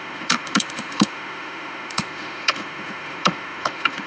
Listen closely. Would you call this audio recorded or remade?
remade